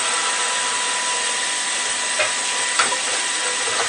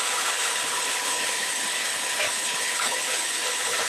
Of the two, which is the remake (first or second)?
second